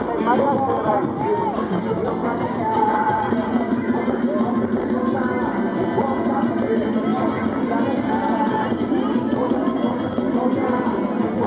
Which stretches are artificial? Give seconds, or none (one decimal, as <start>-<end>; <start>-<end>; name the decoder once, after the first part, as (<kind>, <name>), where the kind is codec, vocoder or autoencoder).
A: none